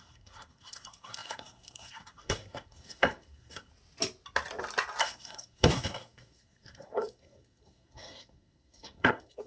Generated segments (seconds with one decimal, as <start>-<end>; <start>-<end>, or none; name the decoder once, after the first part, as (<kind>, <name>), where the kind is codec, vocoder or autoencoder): 0.0-3.7 (codec, SNAC); 5.0-9.5